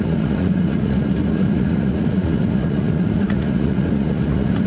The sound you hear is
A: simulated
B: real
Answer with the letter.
A